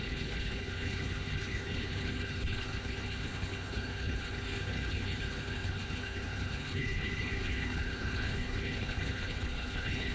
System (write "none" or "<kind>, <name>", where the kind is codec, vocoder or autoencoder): codec, HILCodec